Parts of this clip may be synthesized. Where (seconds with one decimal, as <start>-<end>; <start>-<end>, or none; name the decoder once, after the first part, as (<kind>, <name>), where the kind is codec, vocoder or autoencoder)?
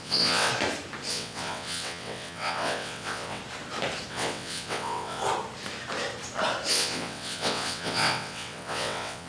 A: 0.0-0.5 (vocoder, WaveNeXt); 1.1-3.4; 4.1-5.2; 6.7-9.3